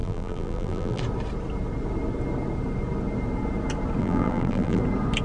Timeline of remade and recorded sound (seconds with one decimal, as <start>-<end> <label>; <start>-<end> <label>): 0.0-1.0 remade; 1.0-4.0 recorded; 4.0-4.8 remade; 4.8-5.2 recorded